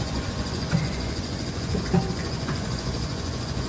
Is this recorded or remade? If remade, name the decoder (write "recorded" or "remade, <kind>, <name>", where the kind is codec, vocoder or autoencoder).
remade, vocoder, Vocos